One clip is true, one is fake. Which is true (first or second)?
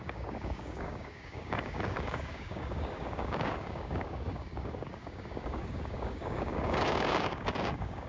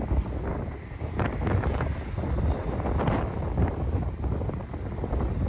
second